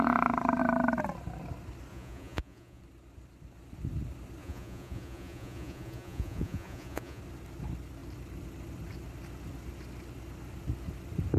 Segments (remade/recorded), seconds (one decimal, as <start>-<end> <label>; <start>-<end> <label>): 0.0-1.9 recorded; 1.9-2.8 remade; 2.8-4.4 recorded; 4.4-7.2 remade; 7.2-11.4 recorded